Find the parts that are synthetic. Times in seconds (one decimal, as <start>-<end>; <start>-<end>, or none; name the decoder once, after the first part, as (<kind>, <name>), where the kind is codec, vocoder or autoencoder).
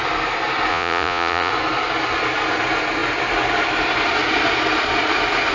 0.7-1.5 (vocoder, Vocos)